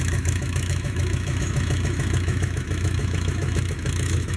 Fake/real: fake